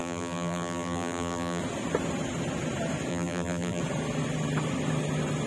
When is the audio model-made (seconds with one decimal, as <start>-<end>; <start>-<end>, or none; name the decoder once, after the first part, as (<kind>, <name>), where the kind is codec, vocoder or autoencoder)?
0.0-1.6 (vocoder, BigVGAN v2); 3.1-3.8